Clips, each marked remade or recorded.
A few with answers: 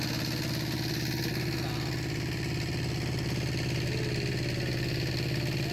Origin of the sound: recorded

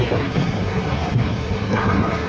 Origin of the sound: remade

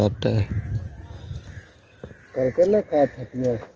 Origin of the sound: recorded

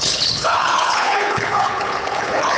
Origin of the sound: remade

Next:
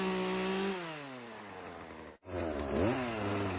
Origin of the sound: recorded